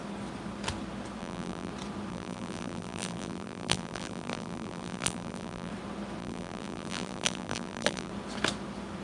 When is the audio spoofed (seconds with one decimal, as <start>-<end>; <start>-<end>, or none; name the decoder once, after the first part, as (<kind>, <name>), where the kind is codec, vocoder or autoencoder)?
1.2-1.7 (vocoder, BigVGAN v2); 2.1-5.7; 6.2-8.1